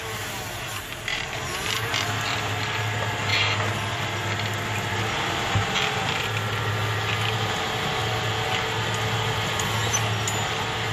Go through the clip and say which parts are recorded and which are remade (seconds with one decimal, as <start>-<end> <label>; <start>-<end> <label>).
0.0-0.7 recorded; 0.7-1.9 remade; 1.9-10.9 recorded